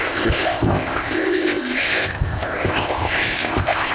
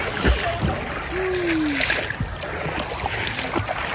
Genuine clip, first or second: second